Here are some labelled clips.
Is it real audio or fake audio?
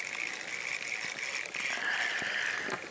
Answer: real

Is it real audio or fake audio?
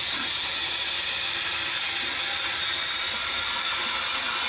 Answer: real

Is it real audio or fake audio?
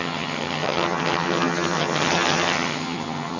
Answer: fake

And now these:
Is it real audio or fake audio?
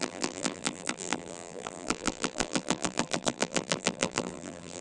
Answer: fake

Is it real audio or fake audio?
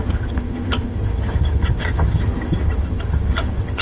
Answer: fake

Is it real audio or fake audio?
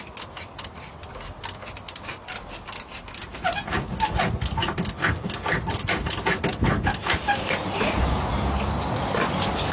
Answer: real